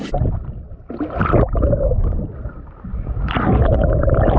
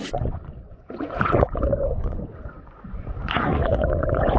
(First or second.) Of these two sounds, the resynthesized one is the second